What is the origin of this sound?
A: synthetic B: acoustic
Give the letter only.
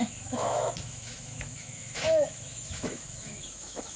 A